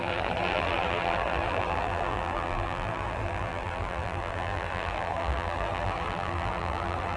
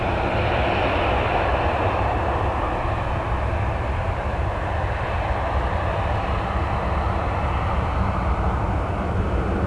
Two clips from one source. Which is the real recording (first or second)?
second